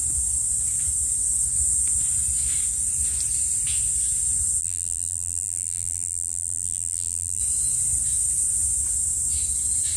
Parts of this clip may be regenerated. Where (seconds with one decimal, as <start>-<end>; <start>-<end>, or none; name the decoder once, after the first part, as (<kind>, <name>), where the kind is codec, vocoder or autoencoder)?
4.6-7.4 (vocoder, BigVGAN v2)